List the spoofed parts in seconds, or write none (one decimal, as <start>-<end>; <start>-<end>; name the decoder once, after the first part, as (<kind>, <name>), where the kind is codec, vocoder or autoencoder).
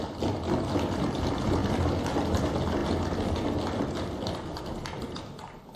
none